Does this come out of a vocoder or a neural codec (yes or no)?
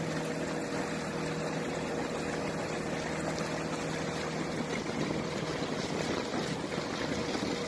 no